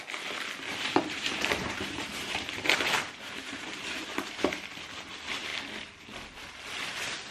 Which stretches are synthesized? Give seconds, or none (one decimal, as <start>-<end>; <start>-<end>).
0.7-5.1